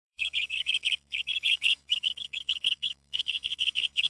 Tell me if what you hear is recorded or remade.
remade